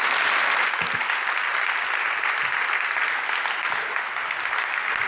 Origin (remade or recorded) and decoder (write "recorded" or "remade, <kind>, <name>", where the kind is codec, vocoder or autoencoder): recorded